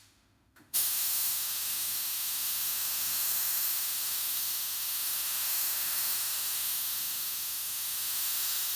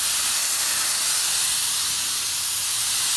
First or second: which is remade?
first